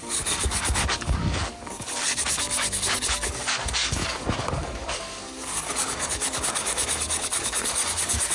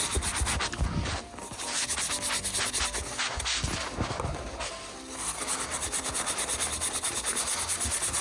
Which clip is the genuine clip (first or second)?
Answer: second